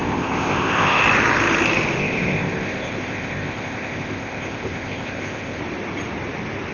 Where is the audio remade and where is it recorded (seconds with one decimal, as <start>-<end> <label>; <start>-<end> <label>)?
0.0-1.0 remade; 1.0-2.0 recorded; 2.0-5.6 remade; 5.6-6.7 recorded